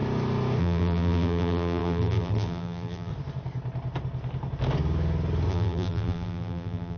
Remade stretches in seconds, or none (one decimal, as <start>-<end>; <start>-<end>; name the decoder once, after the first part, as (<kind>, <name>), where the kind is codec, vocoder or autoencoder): 0.6-3.1 (vocoder, BigVGAN v2); 5.5-7.0